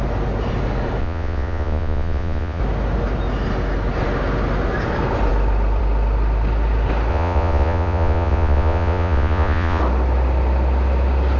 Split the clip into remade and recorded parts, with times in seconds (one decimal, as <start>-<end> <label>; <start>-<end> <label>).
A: 0.0-1.0 recorded; 1.0-2.6 remade; 2.6-7.1 recorded; 7.1-9.8 remade; 9.8-11.4 recorded